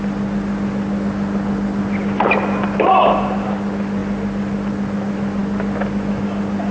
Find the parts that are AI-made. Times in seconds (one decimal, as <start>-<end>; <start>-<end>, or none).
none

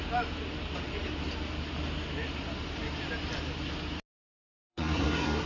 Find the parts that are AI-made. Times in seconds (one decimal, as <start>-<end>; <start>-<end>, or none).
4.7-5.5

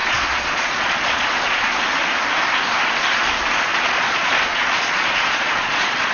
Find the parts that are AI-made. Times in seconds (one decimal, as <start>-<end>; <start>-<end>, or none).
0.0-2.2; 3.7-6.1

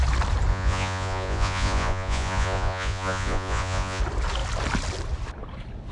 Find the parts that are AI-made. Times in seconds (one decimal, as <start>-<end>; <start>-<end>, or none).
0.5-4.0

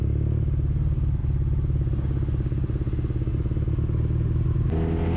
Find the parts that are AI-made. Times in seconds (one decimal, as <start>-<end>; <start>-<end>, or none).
none

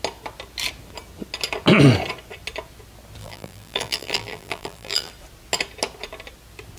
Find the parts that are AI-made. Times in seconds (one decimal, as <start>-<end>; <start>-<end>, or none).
3.2-5.1

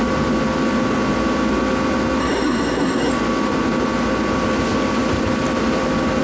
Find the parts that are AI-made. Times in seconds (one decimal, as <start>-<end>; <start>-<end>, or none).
2.2-3.1

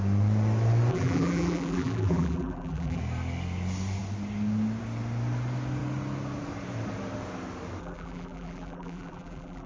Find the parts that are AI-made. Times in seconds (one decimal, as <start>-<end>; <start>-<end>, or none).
0.9-3.0; 7.8-9.7